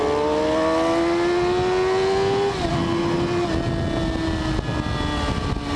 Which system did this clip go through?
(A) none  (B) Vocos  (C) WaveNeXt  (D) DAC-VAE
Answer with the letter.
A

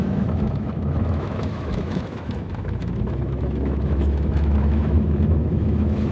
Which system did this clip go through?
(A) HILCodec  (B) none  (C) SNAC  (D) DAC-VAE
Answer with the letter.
D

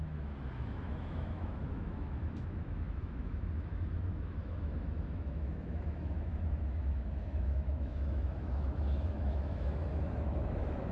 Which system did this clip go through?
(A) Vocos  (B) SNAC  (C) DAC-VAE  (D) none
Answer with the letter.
C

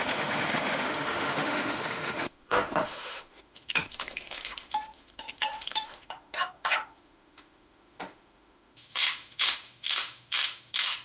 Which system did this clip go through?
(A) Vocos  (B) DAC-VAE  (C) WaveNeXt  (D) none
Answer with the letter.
B